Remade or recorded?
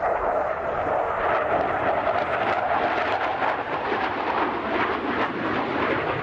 recorded